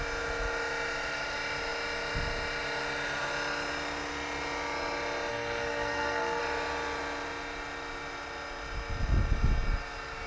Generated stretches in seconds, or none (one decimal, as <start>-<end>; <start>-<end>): 5.3-6.4